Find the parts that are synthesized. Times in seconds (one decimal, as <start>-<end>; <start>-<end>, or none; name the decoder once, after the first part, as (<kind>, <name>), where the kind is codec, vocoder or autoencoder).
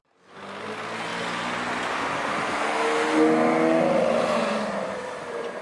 none